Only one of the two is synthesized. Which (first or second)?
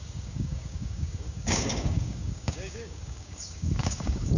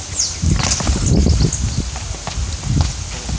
first